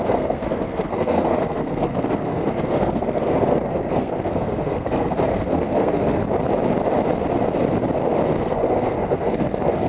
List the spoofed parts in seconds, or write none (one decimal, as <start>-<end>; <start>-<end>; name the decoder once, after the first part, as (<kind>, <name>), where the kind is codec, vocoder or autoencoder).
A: 0.0-6.2 (codec, SNAC); 8.4-9.9